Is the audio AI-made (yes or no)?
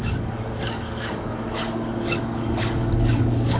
yes